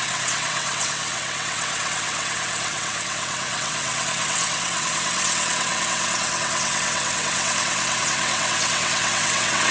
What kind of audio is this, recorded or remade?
remade